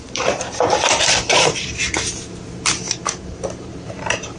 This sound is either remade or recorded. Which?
remade